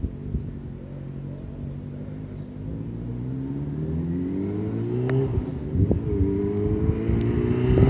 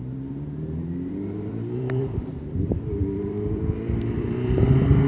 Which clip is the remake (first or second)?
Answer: second